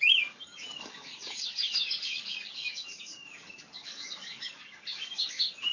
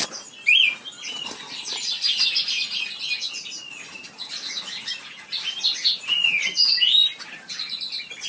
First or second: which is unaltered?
second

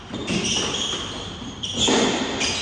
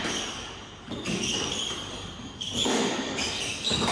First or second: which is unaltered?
first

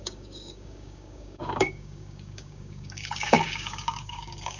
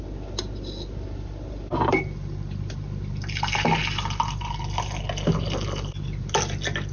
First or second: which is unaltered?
second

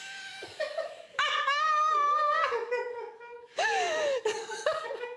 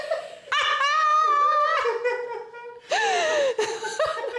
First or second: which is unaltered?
second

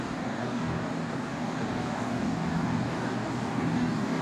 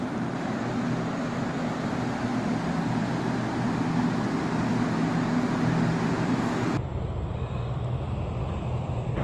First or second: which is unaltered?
second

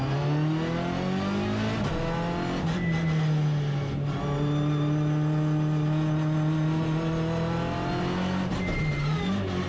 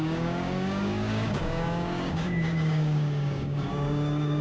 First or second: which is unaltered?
first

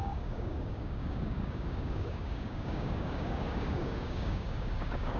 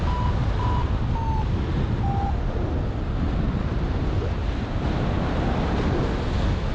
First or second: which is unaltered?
second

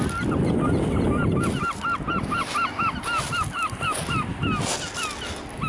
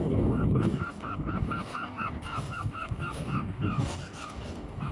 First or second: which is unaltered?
first